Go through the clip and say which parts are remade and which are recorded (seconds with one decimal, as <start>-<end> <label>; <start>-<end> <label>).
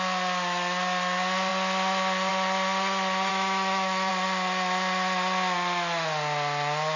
0.0-3.3 recorded; 3.3-4.1 remade; 4.1-7.0 recorded